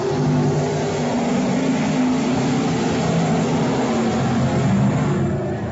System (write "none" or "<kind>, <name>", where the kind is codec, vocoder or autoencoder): none